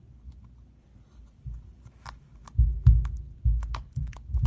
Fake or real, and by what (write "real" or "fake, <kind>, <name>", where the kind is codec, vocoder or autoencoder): real